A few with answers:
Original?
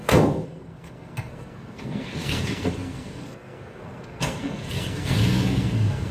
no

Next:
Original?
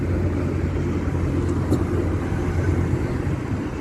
yes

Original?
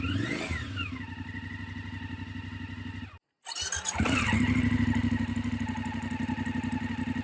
yes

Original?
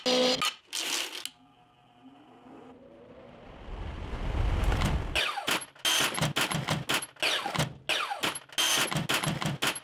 yes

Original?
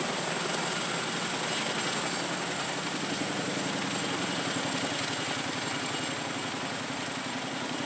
yes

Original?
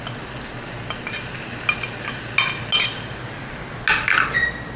yes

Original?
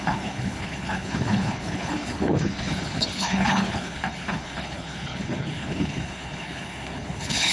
no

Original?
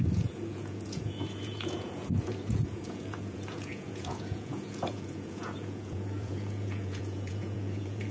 no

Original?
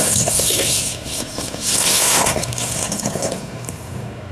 no